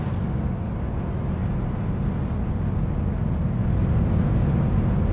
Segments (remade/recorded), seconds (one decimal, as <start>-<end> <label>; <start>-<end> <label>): 0.0-1.4 recorded; 1.4-2.6 remade; 2.6-5.1 recorded